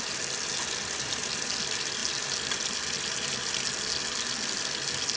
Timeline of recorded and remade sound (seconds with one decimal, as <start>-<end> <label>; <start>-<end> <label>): 0.0-5.2 recorded